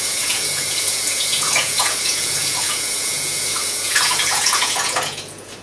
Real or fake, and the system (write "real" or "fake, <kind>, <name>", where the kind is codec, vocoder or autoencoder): fake, vocoder, Vocos